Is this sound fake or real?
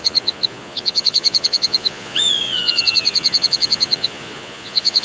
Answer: fake